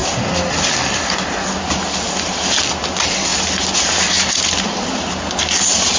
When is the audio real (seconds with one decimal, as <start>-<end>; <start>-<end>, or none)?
0.0-6.0